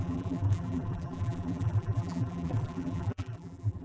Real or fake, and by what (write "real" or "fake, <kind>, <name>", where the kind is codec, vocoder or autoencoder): fake, vocoder, BigVGAN v2